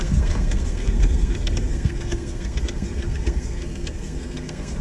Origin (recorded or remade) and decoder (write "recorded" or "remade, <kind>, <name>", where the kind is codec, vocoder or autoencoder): remade, codec, SNAC